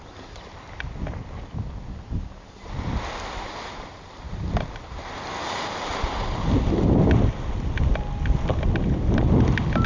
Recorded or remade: recorded